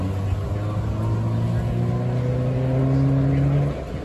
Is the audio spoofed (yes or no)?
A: no